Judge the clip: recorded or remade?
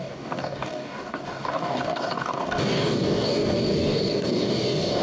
remade